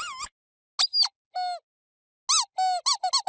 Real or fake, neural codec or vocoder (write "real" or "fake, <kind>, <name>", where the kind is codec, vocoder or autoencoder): real